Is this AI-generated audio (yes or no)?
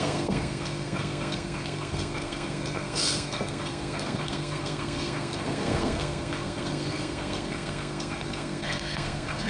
yes